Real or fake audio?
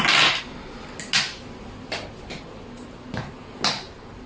real